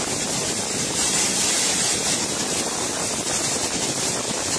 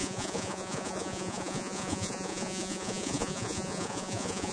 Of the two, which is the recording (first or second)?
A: first